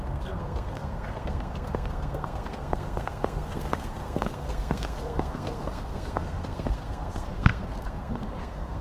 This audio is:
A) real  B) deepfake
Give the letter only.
B